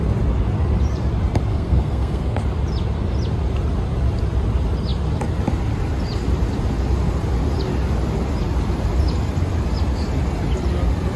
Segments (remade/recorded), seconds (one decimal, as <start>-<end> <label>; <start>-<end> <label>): 0.0-1.5 recorded; 1.5-2.4 remade; 2.4-11.2 recorded